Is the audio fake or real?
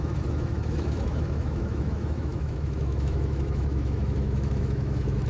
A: fake